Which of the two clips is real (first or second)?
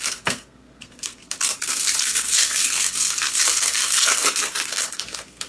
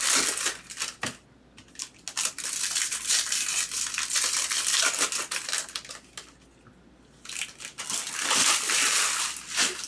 second